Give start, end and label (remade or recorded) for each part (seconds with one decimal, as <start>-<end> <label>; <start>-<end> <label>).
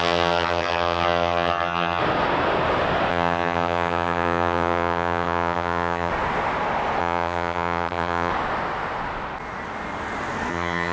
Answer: 0.0-2.0 remade; 2.0-3.1 recorded; 3.1-6.1 remade; 6.1-7.0 recorded; 7.0-8.3 remade; 8.3-10.5 recorded; 10.5-10.9 remade